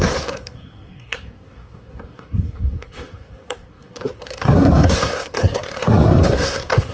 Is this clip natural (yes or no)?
no